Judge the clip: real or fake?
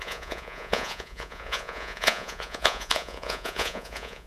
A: fake